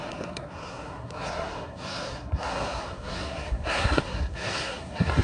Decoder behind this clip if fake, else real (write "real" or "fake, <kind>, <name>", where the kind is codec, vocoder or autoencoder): fake, codec, SNAC